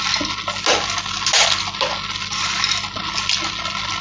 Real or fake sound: real